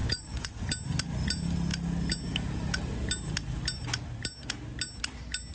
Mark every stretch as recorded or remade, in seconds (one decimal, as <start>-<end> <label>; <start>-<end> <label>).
0.0-0.6 remade; 0.6-5.5 recorded